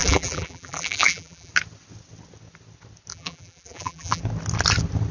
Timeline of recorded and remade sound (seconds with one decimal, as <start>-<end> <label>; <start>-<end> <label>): 0.0-1.5 remade; 1.5-3.1 recorded; 3.1-4.2 remade; 4.2-5.1 recorded